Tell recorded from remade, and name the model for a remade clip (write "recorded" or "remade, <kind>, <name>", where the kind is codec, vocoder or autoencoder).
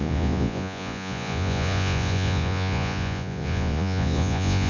remade, vocoder, Vocos